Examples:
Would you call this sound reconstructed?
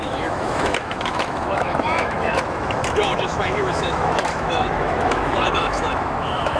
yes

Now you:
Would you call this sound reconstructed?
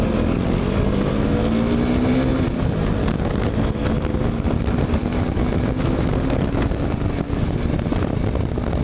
no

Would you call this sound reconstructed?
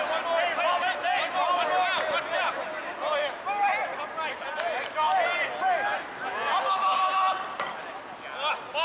no